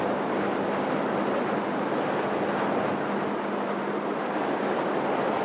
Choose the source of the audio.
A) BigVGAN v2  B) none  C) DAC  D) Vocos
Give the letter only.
B